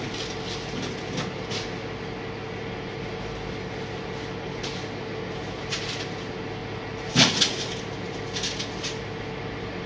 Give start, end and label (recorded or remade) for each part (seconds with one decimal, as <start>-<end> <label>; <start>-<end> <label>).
0.0-9.9 recorded